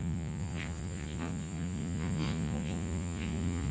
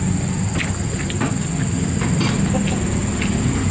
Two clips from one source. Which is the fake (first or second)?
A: first